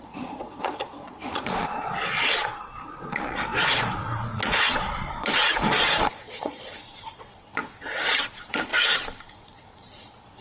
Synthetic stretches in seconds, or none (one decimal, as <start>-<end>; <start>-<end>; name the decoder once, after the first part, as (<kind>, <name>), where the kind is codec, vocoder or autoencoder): 0.0-8.7 (vocoder, Vocos); 9.3-10.4